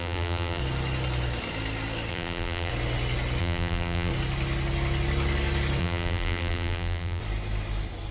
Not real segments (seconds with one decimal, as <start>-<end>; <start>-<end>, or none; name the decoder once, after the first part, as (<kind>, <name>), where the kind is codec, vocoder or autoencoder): 0.0-0.6 (vocoder, BigVGAN v2); 2.1-2.7; 3.4-4.1; 5.8-7.2